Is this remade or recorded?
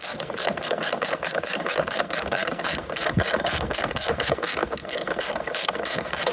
remade